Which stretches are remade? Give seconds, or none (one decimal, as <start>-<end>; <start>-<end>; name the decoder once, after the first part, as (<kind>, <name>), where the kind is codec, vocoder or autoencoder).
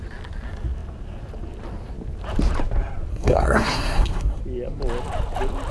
3.1-4.4 (codec, SNAC)